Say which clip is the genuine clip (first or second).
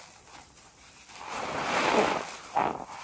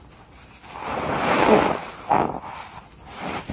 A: second